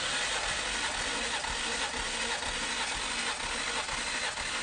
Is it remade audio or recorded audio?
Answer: recorded